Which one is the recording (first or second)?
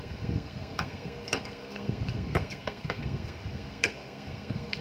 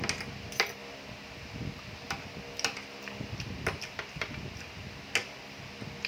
second